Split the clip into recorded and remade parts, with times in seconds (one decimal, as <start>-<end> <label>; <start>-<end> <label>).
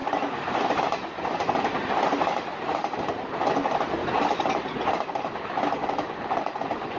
0.0-5.8 recorded; 5.8-7.0 remade